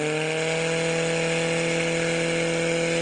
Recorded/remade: recorded